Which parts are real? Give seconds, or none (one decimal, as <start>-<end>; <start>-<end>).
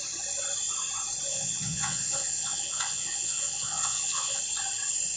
0.0-1.3; 4.4-5.2